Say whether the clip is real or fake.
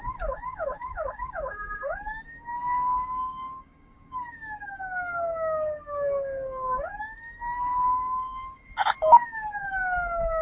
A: fake